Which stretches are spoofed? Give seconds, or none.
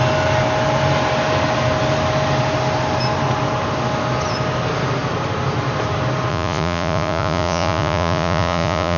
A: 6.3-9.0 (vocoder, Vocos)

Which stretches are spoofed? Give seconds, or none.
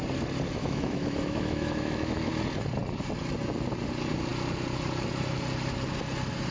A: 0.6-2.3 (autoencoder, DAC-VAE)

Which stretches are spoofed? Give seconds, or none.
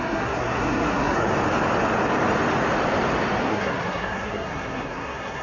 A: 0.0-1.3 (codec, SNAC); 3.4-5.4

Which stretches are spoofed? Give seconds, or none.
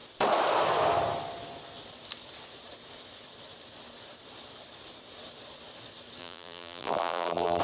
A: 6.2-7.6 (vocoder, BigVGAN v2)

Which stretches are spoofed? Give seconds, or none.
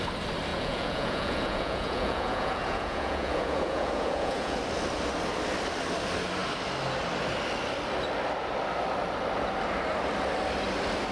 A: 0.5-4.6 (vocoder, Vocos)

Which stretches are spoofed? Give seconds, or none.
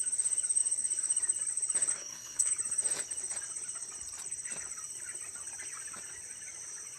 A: 1.9-2.5 (codec, SNAC)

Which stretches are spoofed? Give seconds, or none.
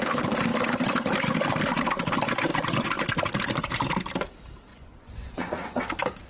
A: 4.7-5.8 (vocoder, Vocos)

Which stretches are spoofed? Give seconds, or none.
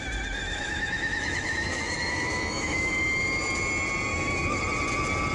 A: 0.4-2.9 (autoencoder, DAC-VAE); 4.1-4.6